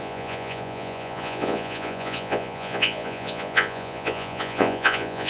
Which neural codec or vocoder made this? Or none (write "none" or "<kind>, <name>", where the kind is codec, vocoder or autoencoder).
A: vocoder, Vocos